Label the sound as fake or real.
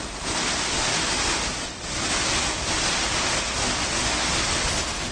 real